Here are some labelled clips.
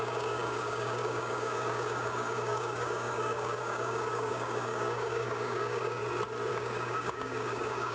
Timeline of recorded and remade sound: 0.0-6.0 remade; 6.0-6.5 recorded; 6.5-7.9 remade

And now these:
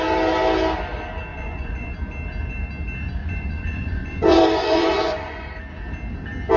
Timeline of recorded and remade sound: 0.0-1.3 recorded; 1.3-1.9 remade; 1.9-3.2 recorded; 3.2-5.5 remade; 5.5-6.6 recorded

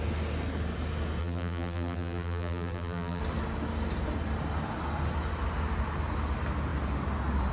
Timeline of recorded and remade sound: 0.0-1.2 recorded; 1.2-3.2 remade; 3.2-7.5 recorded

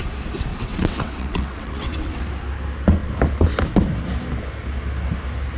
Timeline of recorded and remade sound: 0.0-0.5 recorded; 0.5-2.2 remade; 2.2-5.6 recorded